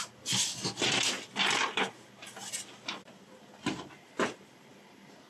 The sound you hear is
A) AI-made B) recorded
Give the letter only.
B